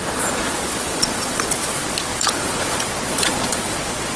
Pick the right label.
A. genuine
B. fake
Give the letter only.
B